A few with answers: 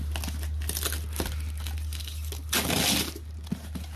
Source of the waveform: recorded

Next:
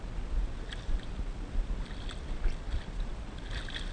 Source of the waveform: remade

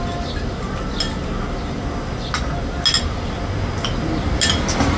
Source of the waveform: recorded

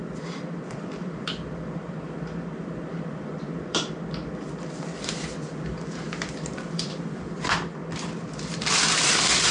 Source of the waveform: remade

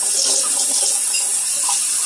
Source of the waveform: recorded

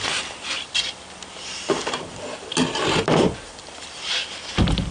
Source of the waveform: remade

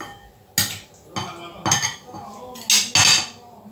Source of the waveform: recorded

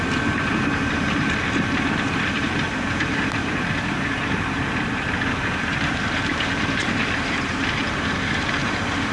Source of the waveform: remade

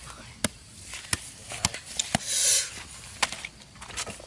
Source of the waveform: recorded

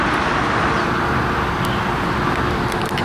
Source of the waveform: recorded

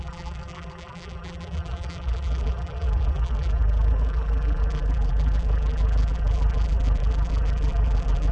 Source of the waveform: remade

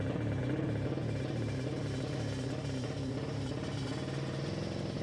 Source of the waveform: recorded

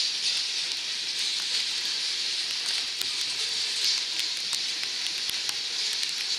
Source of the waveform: recorded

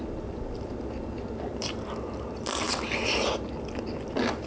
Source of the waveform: recorded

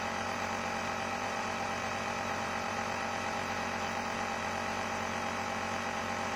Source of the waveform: remade